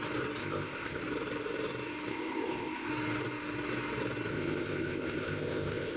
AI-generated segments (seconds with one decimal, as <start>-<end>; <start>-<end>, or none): 0.4-1.0; 2.1-2.9; 4.3-6.0

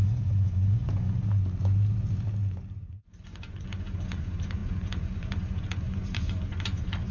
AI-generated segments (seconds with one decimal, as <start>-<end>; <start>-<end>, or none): 0.0-1.2; 2.8-7.1